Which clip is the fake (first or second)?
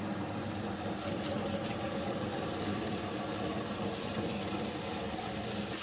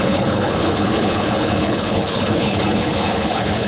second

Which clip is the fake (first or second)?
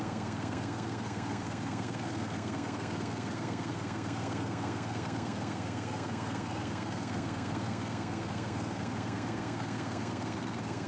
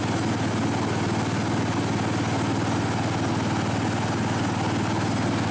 first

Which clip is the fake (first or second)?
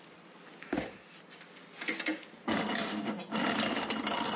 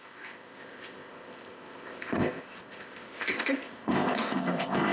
second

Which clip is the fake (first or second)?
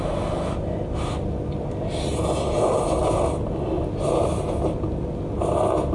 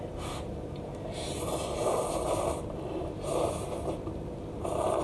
second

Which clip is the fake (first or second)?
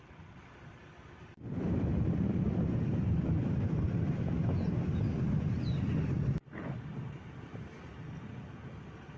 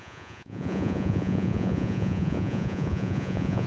second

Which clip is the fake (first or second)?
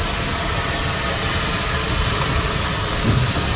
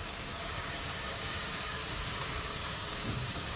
second